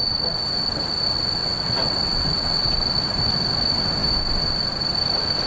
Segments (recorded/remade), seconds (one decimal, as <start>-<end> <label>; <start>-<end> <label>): 0.0-1.4 recorded; 1.4-2.7 remade; 2.7-5.5 recorded